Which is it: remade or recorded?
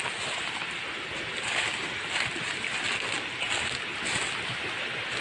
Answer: recorded